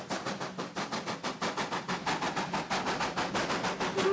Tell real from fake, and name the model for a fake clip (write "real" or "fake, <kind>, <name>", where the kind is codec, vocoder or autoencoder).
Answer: real